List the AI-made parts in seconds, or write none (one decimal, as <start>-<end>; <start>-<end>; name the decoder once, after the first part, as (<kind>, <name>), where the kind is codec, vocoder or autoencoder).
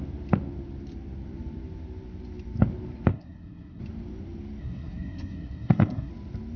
3.1-3.8 (codec, SNAC); 4.6-6.1